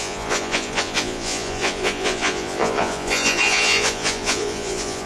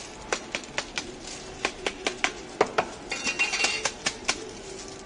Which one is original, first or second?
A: second